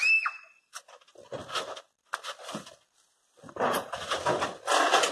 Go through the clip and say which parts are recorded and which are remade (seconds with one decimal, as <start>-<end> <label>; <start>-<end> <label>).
0.0-5.1 recorded